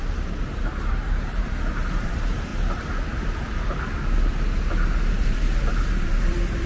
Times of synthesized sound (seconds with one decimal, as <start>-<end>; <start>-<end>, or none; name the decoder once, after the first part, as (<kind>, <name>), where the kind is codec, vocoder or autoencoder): 0.0-2.5 (vocoder, BigVGAN v2); 5.1-6.7